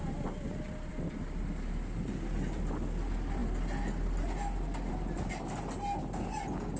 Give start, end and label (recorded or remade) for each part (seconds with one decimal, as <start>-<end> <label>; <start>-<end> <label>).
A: 0.0-6.8 recorded